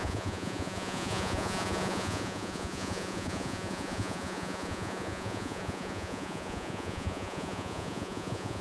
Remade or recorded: remade